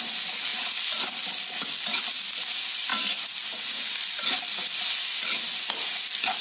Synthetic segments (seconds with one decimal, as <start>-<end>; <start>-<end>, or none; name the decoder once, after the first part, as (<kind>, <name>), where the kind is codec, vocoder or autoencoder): none